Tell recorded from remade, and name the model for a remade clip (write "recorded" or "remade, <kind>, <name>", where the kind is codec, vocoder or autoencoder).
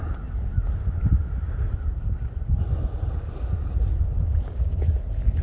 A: recorded